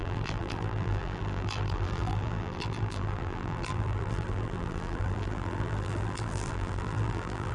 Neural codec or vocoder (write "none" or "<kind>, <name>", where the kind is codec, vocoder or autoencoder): vocoder, BigVGAN v2